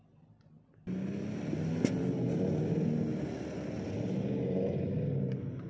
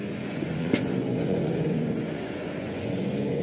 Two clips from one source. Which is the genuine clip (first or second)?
first